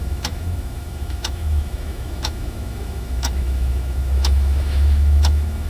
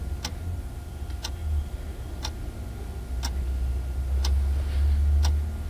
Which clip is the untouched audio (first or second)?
second